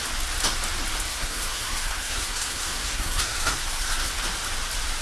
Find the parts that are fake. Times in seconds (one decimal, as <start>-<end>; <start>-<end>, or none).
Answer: 1.1-4.1